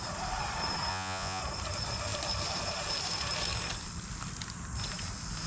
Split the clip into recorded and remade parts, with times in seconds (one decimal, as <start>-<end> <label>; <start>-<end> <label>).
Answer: 0.0-0.9 recorded; 0.9-1.4 remade; 1.4-5.5 recorded

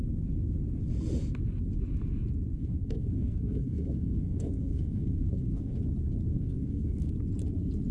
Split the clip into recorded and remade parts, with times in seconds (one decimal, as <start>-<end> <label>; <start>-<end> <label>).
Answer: 0.0-2.5 recorded; 2.5-5.8 remade; 5.8-6.3 recorded; 6.3-7.1 remade; 7.1-7.9 recorded

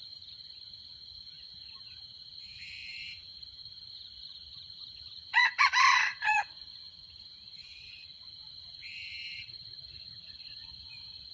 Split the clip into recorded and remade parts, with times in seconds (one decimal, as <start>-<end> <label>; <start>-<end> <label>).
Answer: 0.0-11.3 remade

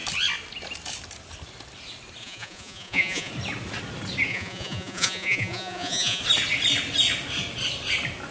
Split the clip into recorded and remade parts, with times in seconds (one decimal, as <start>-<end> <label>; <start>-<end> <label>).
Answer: 0.0-2.2 recorded; 2.2-3.3 remade; 3.3-4.3 recorded; 4.3-6.2 remade; 6.2-8.3 recorded

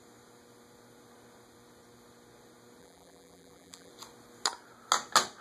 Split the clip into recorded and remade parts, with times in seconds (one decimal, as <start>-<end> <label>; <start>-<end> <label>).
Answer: 0.0-2.8 recorded; 2.8-3.9 remade; 3.9-5.4 recorded

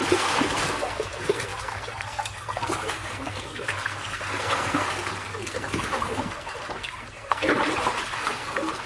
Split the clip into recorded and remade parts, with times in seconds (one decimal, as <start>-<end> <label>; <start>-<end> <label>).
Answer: 0.0-7.5 remade; 7.5-8.1 recorded; 8.1-8.9 remade

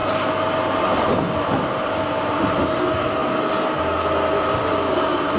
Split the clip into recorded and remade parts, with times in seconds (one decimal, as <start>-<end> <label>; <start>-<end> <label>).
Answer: 0.0-5.4 recorded

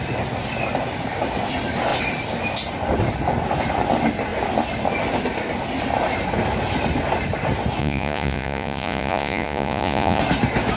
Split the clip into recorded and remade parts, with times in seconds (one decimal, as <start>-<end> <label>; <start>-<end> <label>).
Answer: 0.0-7.8 recorded; 7.8-10.2 remade; 10.2-10.8 recorded